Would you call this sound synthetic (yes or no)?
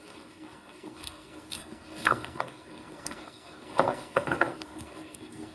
yes